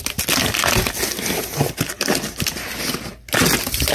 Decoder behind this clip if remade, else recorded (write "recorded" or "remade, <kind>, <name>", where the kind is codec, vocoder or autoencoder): recorded